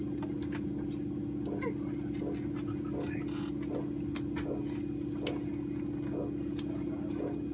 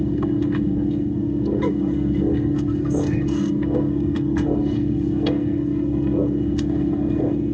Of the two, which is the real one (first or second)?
first